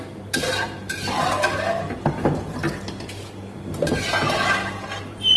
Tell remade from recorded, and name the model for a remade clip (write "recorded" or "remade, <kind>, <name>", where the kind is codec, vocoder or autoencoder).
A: recorded